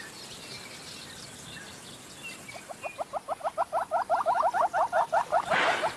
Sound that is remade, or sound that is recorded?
recorded